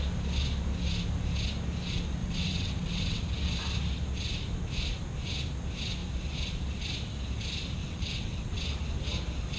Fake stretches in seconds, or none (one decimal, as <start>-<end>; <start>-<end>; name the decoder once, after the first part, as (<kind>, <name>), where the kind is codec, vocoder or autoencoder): 2.2-3.2 (vocoder, WaveNeXt); 7.8-8.8